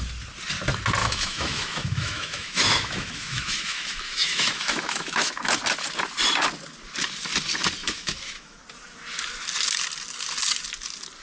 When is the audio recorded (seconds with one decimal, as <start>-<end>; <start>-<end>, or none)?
0.0-1.0; 5.5-7.8; 8.6-11.2